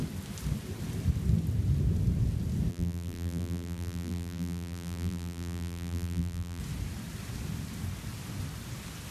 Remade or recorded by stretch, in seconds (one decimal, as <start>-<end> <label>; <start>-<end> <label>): 0.0-2.7 recorded; 2.7-6.6 remade; 6.6-9.1 recorded